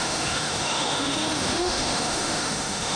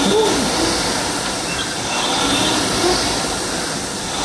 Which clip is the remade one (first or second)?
first